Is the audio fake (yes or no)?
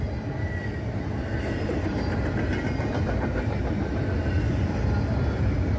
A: no